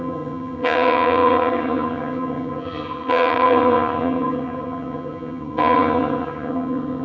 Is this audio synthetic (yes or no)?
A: yes